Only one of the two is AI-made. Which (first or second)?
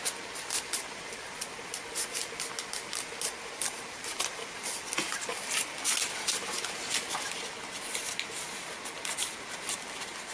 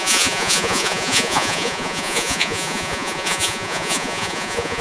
second